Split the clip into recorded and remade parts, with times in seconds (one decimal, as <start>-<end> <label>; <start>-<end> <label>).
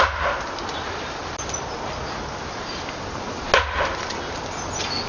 0.0-5.1 recorded